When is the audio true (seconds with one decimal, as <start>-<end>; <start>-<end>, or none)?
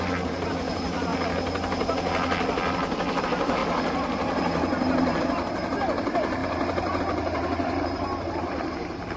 1.1-3.2